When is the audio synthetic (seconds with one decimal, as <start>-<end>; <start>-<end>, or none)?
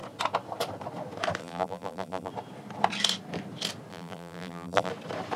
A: 1.4-2.3; 3.9-4.9